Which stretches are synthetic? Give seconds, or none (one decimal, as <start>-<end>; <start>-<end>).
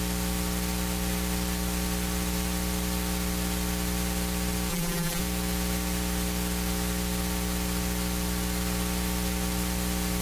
4.7-5.2